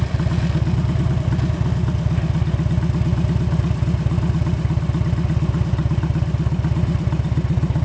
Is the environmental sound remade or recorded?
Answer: recorded